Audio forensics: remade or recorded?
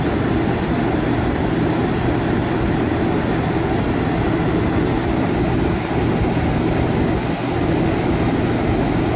recorded